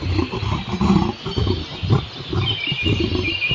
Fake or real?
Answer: real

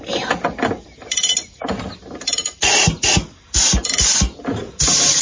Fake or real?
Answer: real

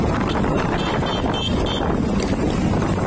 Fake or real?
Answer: real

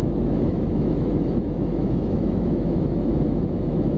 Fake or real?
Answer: fake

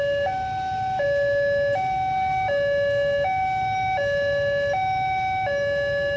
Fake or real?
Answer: real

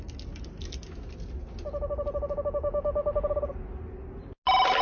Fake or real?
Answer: real